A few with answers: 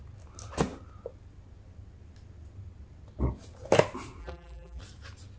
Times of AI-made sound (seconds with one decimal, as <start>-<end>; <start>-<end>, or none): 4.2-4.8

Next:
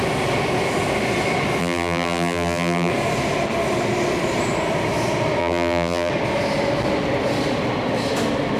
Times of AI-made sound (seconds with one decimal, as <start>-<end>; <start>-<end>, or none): 1.6-2.9; 5.4-6.1

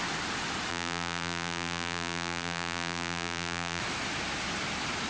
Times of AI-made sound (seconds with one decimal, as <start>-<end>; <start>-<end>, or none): 0.7-3.8

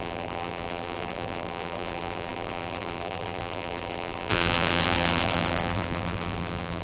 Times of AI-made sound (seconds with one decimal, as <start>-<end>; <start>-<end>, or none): 0.0-6.8